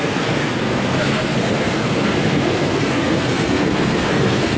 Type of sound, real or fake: fake